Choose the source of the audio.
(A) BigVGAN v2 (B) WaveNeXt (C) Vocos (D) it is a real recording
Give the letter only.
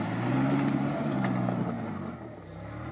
D